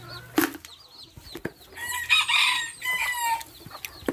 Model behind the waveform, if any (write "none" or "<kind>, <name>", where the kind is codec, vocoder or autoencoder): none